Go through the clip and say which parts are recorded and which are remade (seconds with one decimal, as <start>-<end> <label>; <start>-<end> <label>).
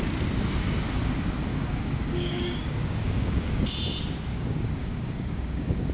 0.0-1.5 recorded; 1.5-3.7 remade; 3.7-4.3 recorded; 4.3-5.9 remade